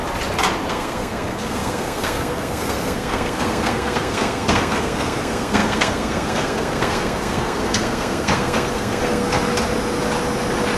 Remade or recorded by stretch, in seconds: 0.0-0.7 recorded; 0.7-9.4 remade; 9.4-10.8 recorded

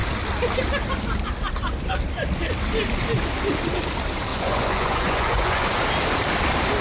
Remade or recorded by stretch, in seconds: 0.0-4.3 recorded; 4.3-5.8 remade; 5.8-6.8 recorded

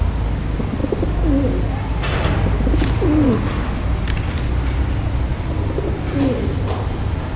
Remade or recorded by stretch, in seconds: 0.0-7.4 recorded

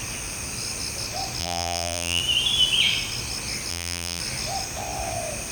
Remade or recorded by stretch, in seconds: 0.0-1.4 recorded; 1.4-2.2 remade; 2.2-3.7 recorded; 3.7-4.2 remade; 4.2-5.5 recorded